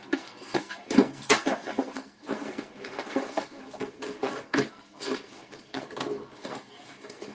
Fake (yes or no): yes